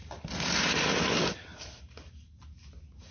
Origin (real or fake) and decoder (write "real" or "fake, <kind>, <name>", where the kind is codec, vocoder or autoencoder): real